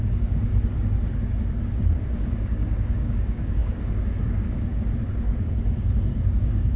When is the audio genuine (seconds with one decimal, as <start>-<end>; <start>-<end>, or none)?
0.5-2.0